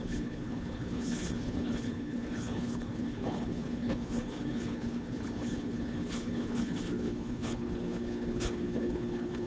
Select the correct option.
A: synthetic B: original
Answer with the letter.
A